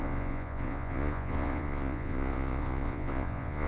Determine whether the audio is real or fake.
fake